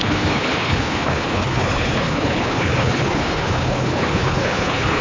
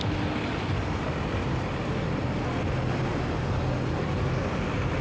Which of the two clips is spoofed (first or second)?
first